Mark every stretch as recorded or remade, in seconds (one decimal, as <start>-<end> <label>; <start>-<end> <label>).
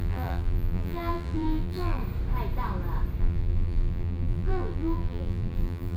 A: 0.0-2.0 remade; 2.0-3.2 recorded; 3.2-6.0 remade